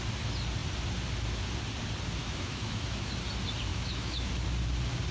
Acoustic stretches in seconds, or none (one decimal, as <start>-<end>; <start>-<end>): 0.0-2.2; 3.1-3.7; 4.3-5.1